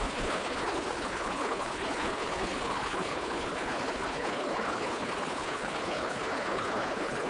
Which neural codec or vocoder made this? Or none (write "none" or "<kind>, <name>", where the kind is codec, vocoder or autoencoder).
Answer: codec, HILCodec